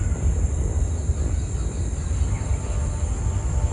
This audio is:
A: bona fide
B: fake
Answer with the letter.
A